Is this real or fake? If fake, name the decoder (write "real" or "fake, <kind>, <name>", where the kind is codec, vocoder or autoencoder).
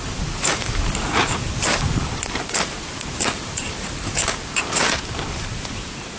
fake, vocoder, BigVGAN v2